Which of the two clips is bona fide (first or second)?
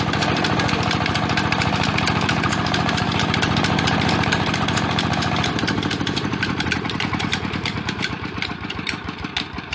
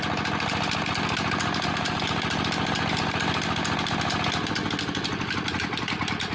second